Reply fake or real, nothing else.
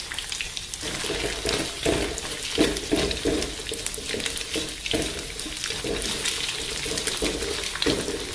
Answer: real